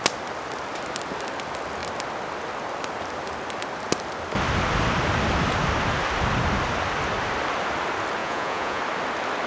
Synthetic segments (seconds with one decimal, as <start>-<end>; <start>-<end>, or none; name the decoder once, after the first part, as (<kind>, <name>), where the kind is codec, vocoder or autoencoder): 8.2-8.8 (vocoder, Vocos)